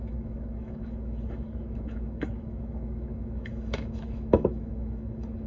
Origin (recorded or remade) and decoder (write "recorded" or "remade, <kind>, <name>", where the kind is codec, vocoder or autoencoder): remade, autoencoder, DAC-VAE